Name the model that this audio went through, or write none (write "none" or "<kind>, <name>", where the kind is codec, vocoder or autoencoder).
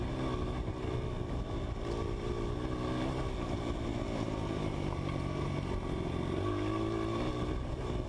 none